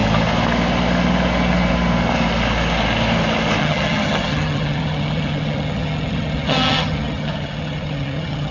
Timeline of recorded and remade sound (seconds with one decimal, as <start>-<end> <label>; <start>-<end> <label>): 0.0-3.6 recorded; 3.6-8.5 remade